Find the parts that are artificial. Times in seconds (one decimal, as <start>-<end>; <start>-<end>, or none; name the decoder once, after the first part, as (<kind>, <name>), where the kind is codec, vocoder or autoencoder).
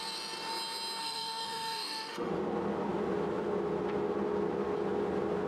1.0-2.3 (autoencoder, DAC-VAE)